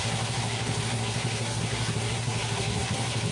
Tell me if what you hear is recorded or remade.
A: remade